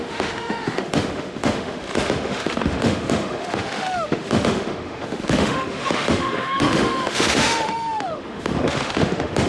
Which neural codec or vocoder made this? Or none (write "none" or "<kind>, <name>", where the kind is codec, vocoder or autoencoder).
autoencoder, DAC-VAE